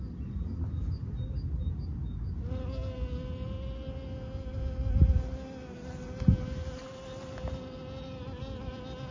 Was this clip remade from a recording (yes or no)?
no